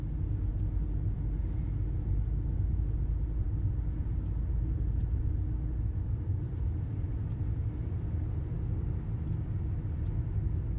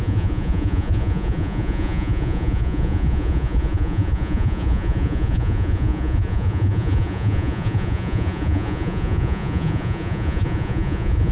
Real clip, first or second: first